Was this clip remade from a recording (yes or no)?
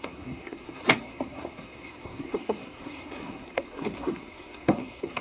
yes